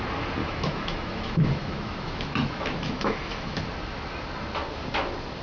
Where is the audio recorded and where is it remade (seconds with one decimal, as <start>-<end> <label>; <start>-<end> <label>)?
0.0-0.4 recorded; 0.4-3.6 remade; 3.6-5.4 recorded